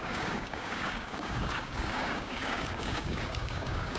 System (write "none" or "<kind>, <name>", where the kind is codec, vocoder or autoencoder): codec, DAC